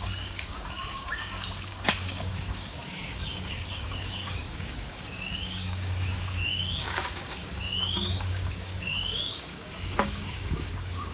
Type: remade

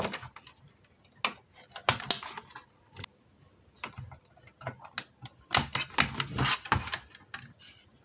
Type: recorded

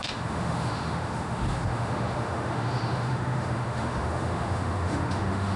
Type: remade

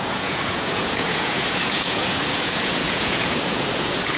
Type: remade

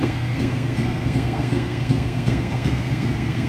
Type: remade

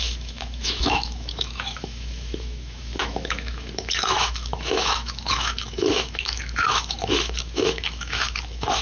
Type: remade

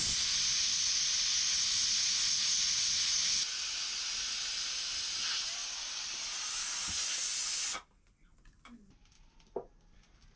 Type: recorded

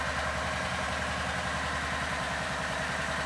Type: remade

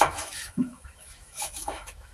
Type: remade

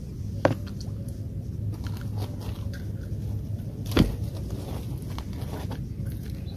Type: recorded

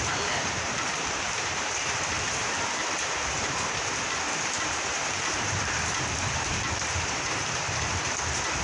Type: remade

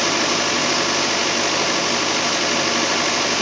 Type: recorded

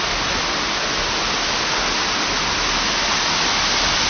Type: recorded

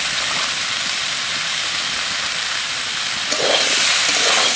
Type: remade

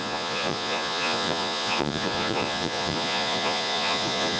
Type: remade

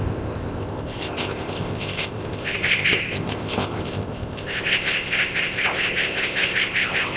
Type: remade